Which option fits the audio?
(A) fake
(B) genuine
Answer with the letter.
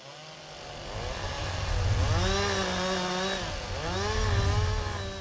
B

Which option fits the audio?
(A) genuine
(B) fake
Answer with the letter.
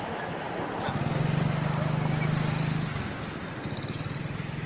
A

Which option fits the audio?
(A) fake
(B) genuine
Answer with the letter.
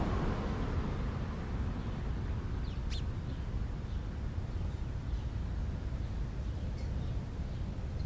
B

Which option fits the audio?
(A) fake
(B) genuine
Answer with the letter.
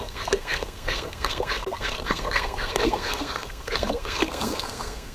A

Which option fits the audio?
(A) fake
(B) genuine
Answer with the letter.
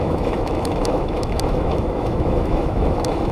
A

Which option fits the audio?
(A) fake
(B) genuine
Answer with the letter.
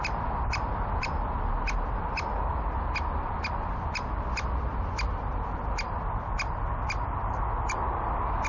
B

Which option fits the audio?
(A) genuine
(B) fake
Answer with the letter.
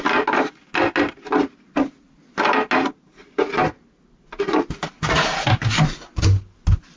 A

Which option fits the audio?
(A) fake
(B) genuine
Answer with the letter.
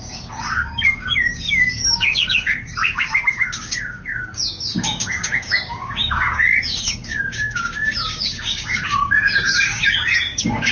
A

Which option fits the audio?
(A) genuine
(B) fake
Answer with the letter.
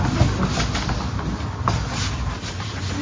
A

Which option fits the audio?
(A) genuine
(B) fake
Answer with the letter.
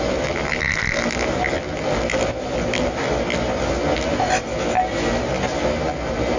A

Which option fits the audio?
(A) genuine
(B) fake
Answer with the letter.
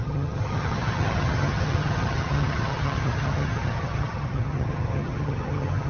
B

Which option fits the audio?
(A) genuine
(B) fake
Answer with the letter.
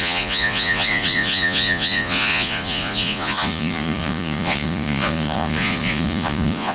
B